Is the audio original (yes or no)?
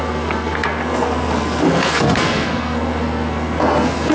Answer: no